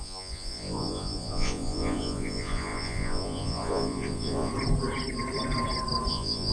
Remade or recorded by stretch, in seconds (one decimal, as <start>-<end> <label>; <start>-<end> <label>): 0.0-4.5 remade; 4.5-6.1 recorded; 6.1-6.5 remade